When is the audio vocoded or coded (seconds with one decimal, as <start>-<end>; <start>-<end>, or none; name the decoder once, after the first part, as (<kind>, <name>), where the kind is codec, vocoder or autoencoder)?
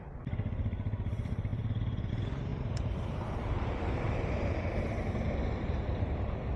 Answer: 0.0-1.5 (vocoder, BigVGAN v2); 2.1-6.6